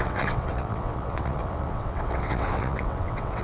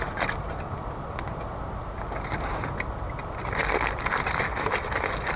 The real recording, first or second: second